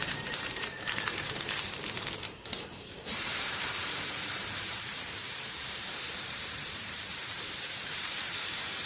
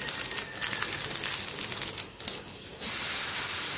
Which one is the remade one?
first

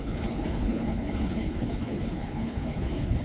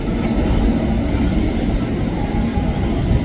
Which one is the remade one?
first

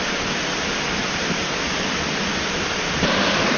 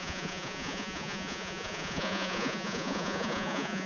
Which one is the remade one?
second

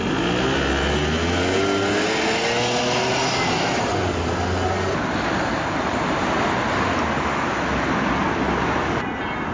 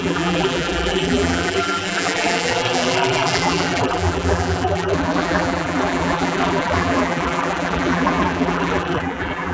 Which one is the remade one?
second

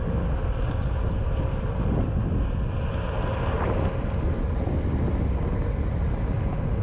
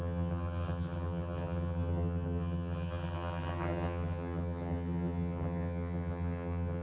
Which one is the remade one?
second